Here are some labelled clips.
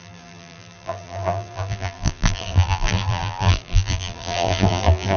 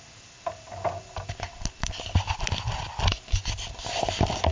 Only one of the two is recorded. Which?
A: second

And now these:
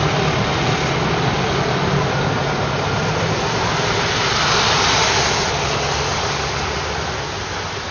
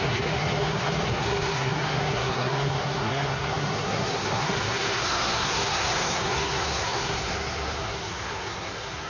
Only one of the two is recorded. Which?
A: first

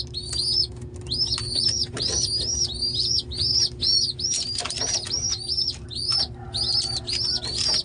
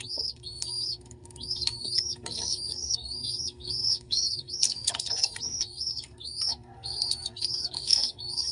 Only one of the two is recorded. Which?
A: first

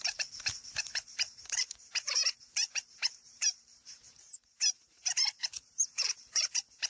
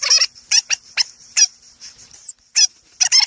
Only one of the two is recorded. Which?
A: second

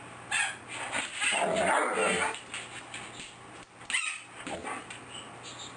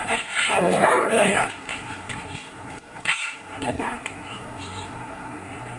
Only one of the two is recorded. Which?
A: first